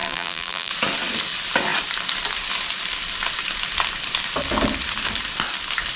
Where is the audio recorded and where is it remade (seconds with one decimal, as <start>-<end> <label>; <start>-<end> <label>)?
0.0-0.7 remade; 0.7-6.0 recorded